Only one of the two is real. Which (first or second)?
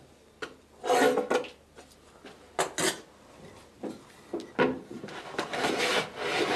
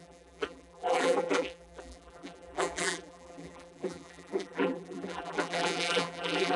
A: first